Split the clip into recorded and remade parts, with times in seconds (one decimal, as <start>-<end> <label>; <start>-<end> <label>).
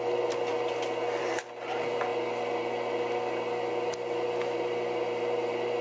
0.0-5.8 recorded